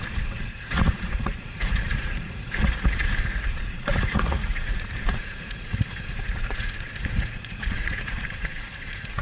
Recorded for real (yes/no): no